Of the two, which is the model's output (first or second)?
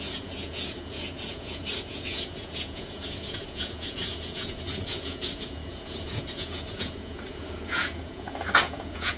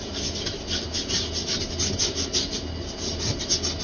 first